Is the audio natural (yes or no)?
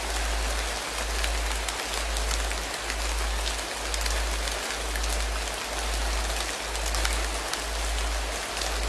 yes